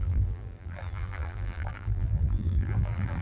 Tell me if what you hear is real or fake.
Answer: fake